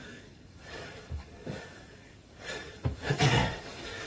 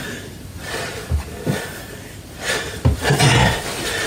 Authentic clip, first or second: second